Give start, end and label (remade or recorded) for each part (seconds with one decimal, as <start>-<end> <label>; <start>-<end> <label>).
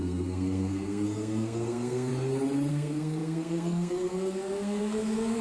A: 0.0-2.1 remade; 2.1-2.7 recorded; 2.7-5.4 remade